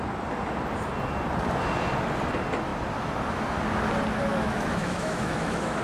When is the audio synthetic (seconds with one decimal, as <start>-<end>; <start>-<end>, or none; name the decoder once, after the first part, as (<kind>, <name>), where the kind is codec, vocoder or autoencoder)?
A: 4.3-5.8 (autoencoder, DAC-VAE)

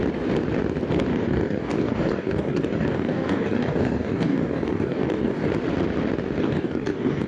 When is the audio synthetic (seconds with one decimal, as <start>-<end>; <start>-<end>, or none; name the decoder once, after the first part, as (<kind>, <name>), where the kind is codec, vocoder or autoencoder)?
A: 1.1-5.5 (codec, DAC); 6.4-7.3

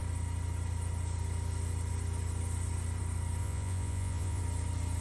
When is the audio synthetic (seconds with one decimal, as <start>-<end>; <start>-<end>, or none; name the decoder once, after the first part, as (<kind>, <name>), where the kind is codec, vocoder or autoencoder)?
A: 3.4-4.4 (vocoder, Vocos)

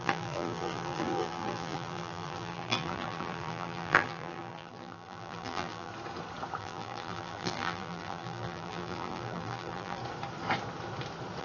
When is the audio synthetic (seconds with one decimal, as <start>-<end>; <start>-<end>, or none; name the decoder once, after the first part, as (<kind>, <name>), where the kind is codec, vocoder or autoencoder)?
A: 0.0-5.9 (vocoder, BigVGAN v2); 6.6-10.0

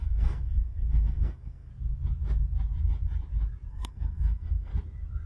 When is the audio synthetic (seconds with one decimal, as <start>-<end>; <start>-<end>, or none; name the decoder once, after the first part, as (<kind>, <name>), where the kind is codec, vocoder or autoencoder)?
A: 0.0-1.7 (codec, SNAC); 3.7-4.7

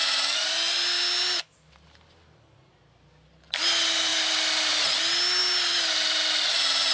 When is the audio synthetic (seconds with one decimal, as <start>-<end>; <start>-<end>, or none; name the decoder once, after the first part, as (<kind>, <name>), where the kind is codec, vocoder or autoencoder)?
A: none

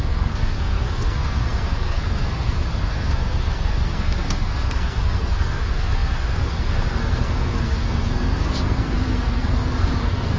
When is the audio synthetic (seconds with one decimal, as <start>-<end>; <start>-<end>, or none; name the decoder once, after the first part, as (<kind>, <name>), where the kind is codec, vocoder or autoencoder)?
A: 0.0-10.4 (codec, SNAC)

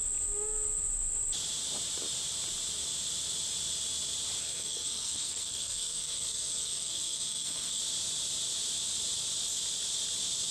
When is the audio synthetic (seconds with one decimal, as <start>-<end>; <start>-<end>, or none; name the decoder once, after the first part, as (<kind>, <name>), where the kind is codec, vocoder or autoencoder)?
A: 4.4-7.8 (codec, SNAC)